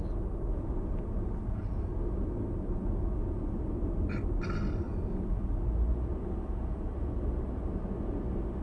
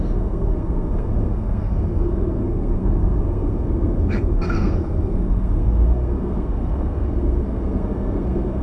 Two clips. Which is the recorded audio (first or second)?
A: first